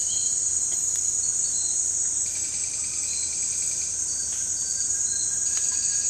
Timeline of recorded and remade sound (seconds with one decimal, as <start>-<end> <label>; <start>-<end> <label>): 0.0-1.4 recorded; 1.4-2.8 remade; 2.8-3.7 recorded; 3.7-6.1 remade